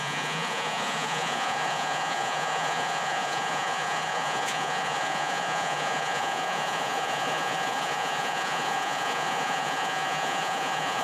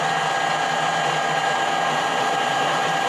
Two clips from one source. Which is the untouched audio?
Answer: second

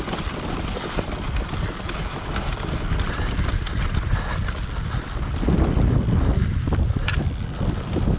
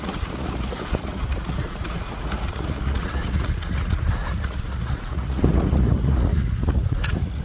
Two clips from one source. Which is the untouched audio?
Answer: first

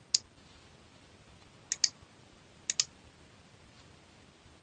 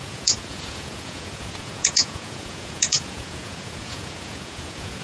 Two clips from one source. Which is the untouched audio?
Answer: first